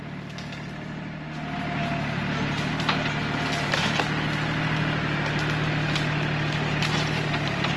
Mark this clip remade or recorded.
recorded